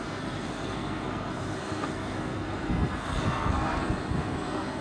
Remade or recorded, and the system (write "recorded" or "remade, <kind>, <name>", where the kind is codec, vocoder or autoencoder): remade, codec, SNAC